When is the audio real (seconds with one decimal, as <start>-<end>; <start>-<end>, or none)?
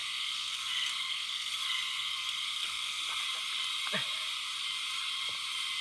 3.0-5.8